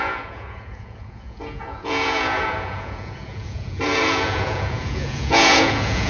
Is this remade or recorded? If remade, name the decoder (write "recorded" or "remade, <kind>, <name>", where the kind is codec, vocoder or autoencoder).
remade, vocoder, Vocos